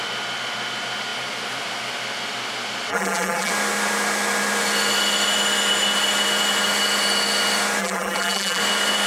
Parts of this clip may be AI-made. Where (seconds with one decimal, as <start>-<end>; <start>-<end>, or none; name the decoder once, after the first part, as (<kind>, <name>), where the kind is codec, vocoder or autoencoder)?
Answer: 2.9-3.5 (vocoder, BigVGAN v2); 7.8-8.6